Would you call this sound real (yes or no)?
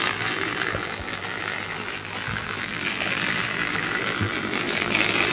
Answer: no